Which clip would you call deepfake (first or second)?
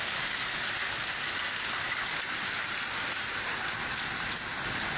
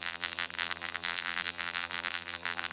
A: second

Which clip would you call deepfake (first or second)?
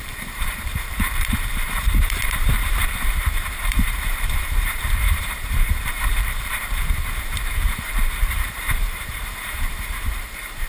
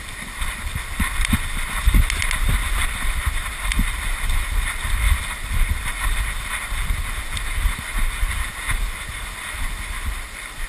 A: first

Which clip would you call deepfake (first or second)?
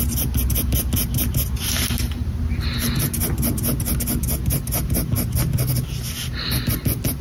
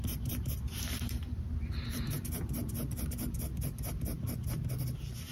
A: second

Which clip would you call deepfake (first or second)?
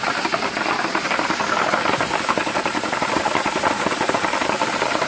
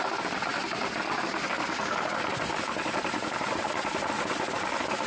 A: second